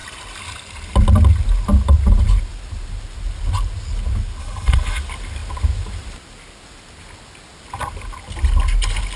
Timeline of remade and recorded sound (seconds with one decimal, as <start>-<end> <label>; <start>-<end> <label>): 0.0-4.4 recorded; 4.4-5.0 remade; 5.0-9.2 recorded